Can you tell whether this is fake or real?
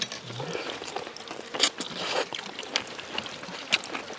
real